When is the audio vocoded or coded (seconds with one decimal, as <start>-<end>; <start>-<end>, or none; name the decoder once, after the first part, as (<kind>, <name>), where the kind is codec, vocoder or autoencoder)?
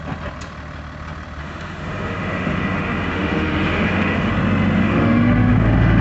1.4-4.3 (autoencoder, DAC-VAE); 4.8-6.0